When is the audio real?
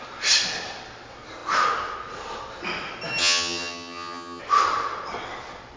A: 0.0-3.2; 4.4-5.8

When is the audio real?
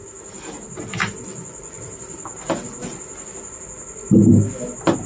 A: 0.0-1.3; 1.8-5.1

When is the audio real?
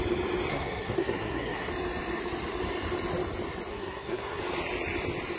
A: 0.0-0.5; 1.7-3.7; 4.4-5.4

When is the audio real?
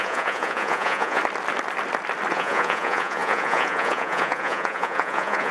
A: 1.2-2.3